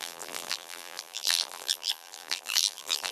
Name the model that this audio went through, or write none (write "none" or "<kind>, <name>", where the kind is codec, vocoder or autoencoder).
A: vocoder, BigVGAN v2